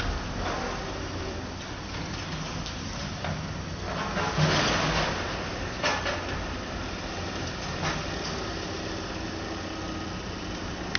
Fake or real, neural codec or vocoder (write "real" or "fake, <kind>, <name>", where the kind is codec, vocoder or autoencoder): real